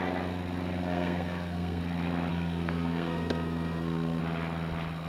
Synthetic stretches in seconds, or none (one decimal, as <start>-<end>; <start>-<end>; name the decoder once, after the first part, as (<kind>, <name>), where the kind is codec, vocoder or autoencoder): 0.8-1.8 (codec, SNAC); 2.3-4.2